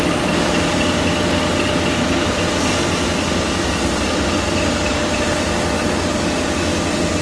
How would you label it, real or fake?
real